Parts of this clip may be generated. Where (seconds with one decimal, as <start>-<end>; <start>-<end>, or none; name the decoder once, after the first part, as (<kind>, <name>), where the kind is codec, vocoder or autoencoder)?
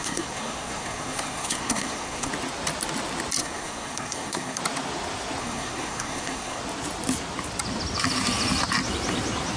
0.0-2.3 (codec, SNAC); 3.4-4.6; 5.4-6.6